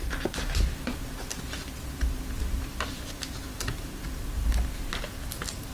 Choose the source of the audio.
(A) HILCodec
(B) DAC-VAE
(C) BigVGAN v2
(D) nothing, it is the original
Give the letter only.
C